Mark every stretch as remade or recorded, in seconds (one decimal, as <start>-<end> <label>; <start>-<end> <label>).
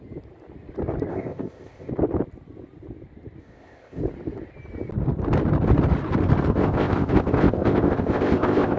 0.0-1.1 recorded; 1.1-1.9 remade; 1.9-3.4 recorded; 3.4-4.0 remade; 4.0-6.5 recorded; 6.5-8.8 remade